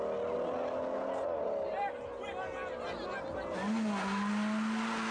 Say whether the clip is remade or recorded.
recorded